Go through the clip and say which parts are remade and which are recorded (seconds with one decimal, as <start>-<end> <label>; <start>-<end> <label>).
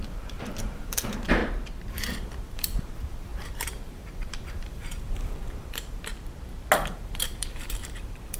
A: 0.0-1.4 remade; 1.4-1.9 recorded; 1.9-6.1 remade; 6.1-6.9 recorded; 6.9-8.4 remade